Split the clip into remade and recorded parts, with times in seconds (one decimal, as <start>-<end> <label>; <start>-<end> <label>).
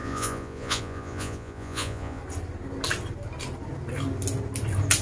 0.0-2.2 remade; 2.2-5.0 recorded